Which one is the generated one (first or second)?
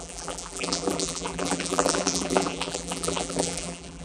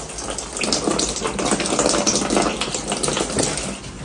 first